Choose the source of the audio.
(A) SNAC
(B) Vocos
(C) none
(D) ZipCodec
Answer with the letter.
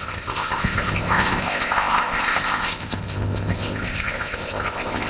D